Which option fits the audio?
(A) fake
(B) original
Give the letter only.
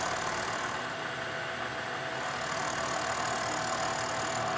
B